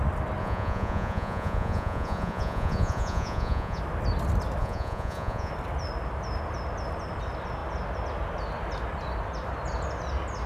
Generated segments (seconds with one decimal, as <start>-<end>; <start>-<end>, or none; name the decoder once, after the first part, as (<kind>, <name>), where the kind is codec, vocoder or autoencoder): 0.4-3.8 (vocoder, Vocos); 4.6-5.5